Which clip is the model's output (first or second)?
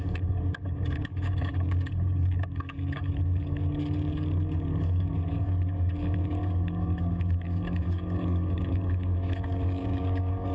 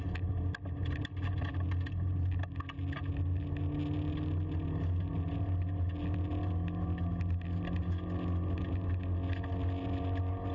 first